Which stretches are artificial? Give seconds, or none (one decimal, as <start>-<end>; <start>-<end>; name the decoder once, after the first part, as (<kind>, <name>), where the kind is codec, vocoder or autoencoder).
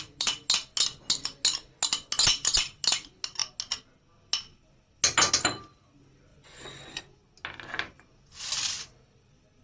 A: 6.3-7.0 (vocoder, Vocos)